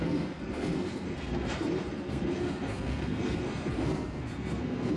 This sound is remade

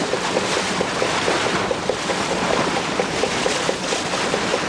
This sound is remade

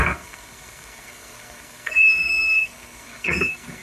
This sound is remade